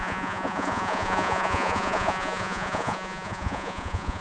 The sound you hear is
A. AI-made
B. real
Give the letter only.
A